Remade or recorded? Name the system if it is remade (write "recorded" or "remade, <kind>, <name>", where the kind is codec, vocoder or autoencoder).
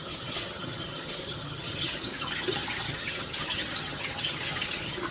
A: remade, vocoder, HiFi-GAN